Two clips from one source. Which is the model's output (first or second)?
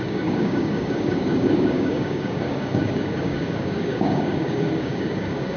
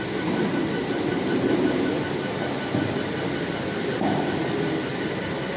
first